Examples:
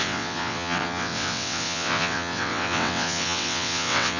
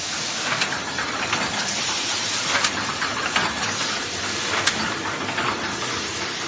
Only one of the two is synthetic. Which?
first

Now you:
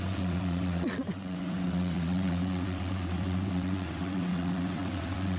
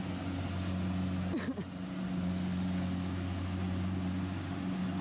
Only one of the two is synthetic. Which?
first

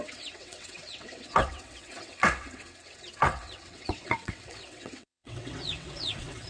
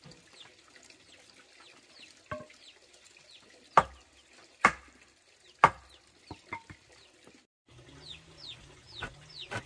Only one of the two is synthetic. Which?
first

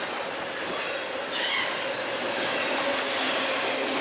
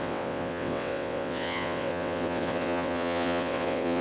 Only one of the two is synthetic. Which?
second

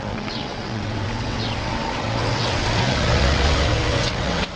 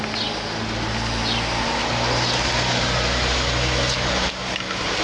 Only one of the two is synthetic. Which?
first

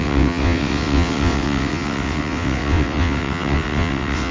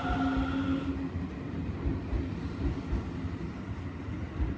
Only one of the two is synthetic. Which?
first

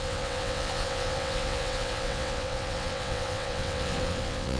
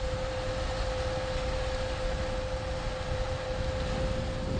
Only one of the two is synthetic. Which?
first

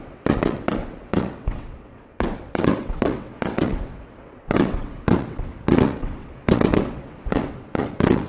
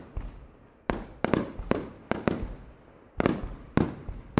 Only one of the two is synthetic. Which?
first